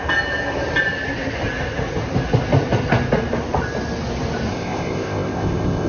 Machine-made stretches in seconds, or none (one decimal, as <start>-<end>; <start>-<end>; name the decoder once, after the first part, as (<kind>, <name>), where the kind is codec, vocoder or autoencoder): 4.5-5.9 (codec, ZipCodec)